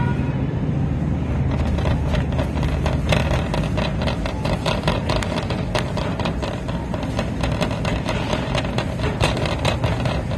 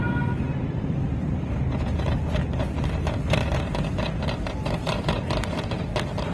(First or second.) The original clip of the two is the first